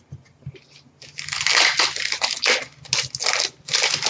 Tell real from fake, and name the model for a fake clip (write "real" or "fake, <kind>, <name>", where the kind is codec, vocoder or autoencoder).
real